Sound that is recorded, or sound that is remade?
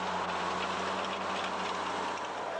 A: recorded